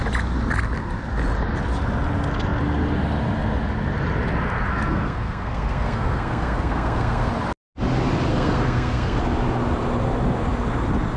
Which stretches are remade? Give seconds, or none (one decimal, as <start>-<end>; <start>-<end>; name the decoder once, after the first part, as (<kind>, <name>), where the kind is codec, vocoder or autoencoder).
4.7-7.3 (codec, SNAC); 8.3-9.2